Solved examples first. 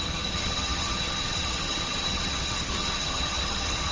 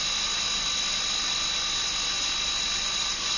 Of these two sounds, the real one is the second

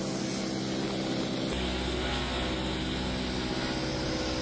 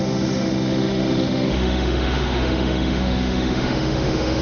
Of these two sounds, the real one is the first